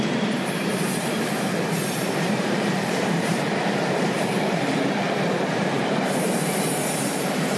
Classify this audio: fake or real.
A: fake